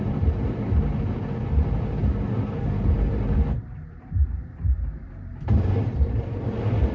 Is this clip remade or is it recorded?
remade